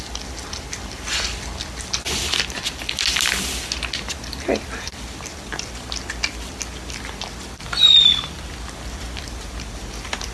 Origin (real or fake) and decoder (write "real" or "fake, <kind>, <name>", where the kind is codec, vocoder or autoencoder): real